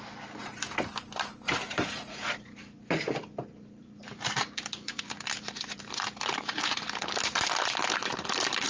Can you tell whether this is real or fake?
real